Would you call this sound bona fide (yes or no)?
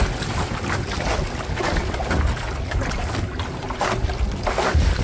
yes